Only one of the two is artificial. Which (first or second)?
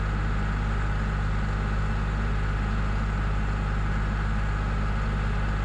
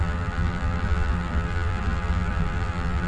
second